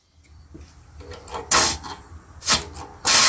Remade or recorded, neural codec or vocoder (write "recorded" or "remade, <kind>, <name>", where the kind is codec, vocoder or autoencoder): recorded